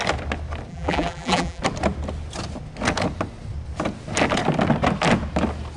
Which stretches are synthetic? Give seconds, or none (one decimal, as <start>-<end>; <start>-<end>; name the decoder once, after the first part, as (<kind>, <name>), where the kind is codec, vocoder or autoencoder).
0.7-1.6 (vocoder, BigVGAN v2)